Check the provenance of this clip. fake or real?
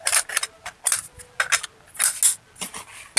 real